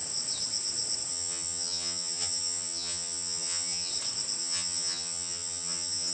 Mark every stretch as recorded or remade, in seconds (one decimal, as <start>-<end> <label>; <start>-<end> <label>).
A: 0.0-1.1 recorded; 1.1-3.9 remade; 3.9-4.4 recorded; 4.4-6.1 remade